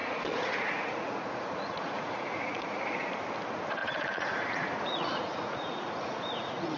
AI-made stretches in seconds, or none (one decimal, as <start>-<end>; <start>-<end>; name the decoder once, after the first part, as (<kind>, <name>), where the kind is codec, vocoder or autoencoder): 0.0-3.1 (vocoder, Vocos); 3.8-6.8